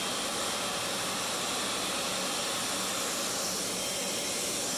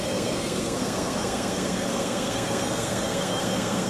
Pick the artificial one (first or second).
second